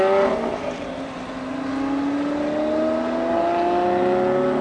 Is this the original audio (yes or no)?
yes